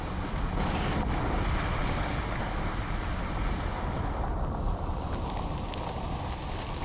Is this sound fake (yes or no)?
no